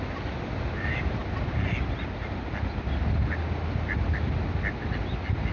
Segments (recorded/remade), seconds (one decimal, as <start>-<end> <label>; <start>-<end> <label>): 0.0-5.5 recorded